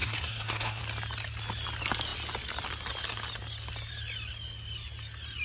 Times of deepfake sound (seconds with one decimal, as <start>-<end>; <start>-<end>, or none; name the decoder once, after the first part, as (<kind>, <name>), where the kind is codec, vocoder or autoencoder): 0.0-0.8 (codec, SNAC)